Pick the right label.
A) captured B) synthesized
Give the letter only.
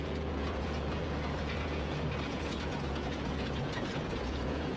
B